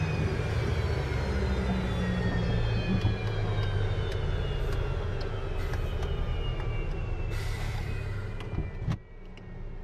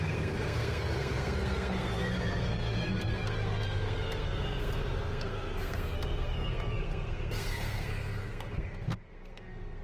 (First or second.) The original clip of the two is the first